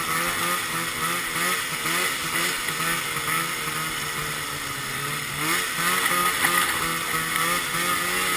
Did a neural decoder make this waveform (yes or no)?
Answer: no